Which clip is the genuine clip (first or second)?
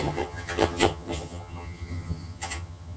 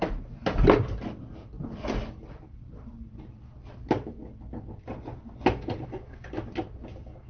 second